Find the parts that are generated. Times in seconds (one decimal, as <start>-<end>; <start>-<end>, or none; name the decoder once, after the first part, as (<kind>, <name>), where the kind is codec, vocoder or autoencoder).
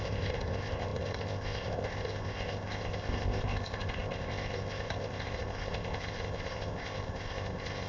0.0-7.9 (codec, ZipCodec)